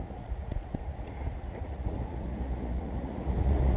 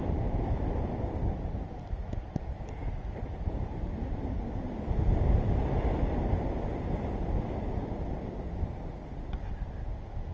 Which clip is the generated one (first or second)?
first